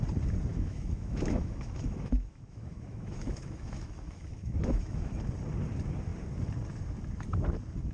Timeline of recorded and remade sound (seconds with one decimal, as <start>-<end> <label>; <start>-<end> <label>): 0.0-0.5 recorded; 0.5-5.1 remade; 5.1-7.9 recorded